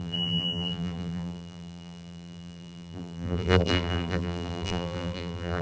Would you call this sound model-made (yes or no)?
yes